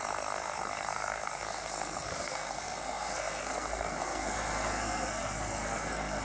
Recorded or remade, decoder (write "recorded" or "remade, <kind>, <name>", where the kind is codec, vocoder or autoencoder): remade, codec, SNAC